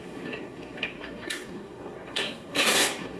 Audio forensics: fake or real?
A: fake